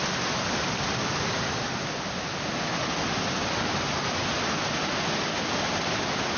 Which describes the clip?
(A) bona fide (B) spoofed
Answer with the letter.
A